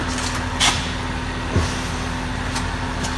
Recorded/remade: recorded